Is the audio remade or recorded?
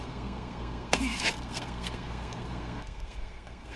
remade